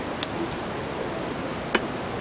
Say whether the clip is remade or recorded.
recorded